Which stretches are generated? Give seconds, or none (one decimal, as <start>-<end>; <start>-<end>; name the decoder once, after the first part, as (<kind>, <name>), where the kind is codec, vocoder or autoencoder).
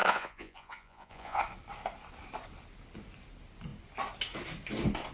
0.0-1.4 (vocoder, Vocos)